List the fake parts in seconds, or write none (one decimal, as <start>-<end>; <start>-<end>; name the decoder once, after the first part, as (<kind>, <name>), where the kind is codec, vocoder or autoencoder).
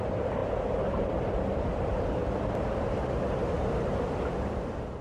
none